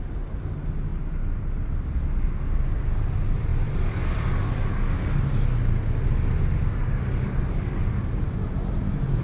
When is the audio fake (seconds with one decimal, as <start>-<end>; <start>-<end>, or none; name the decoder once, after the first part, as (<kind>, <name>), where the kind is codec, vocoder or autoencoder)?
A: none